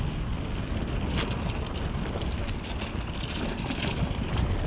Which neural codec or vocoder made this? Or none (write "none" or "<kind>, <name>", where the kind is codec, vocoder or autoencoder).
none